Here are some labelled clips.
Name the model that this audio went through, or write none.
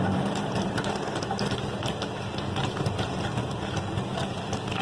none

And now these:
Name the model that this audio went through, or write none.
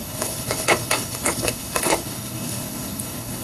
codec, HILCodec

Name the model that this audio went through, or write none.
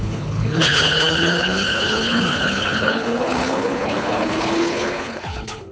codec, HILCodec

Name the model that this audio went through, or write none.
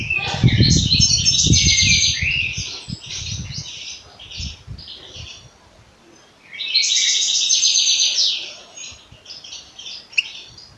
none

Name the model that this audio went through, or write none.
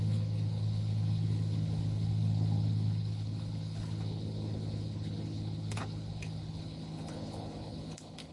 codec, HILCodec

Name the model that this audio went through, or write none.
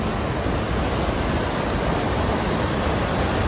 none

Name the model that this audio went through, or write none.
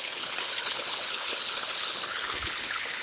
codec, HILCodec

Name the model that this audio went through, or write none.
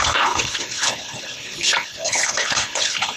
codec, HILCodec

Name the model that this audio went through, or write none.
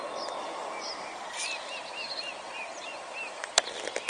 none